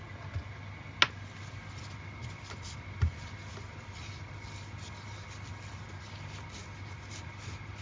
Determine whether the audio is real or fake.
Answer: real